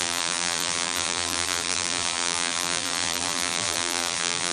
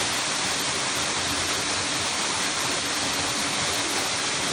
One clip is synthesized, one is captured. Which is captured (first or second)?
second